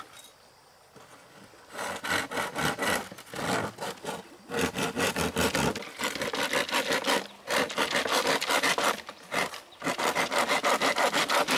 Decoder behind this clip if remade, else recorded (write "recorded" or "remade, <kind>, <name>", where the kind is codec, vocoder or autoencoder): recorded